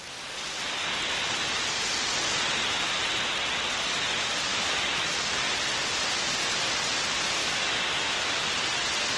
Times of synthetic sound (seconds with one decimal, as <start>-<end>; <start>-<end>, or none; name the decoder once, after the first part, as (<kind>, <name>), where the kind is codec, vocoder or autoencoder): 4.5-5.1 (autoencoder, DAC-VAE); 7.4-8.4